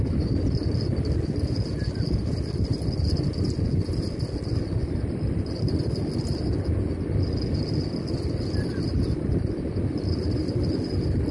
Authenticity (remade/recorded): recorded